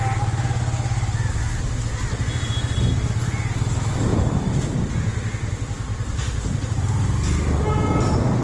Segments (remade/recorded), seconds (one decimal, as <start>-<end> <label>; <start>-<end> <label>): 0.0-5.9 recorded; 5.9-6.4 remade; 6.4-8.4 recorded